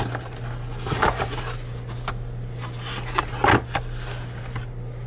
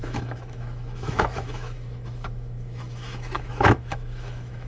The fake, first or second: second